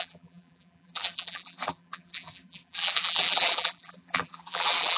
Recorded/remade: remade